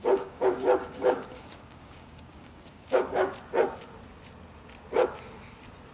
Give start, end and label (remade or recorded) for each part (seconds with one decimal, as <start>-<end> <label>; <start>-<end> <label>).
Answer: 0.0-3.3 remade; 3.3-5.9 recorded